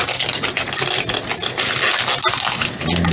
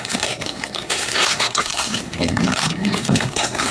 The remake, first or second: second